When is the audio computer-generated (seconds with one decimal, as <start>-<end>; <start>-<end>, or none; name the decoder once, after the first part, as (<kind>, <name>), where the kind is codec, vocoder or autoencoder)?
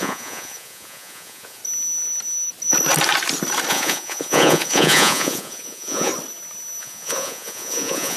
0.0-1.6 (vocoder, Vocos); 3.7-6.1; 6.8-8.2